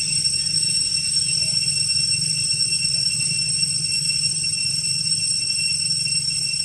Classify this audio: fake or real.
real